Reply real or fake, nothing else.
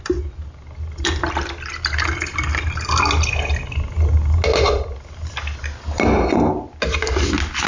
real